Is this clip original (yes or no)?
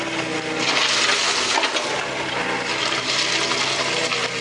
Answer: yes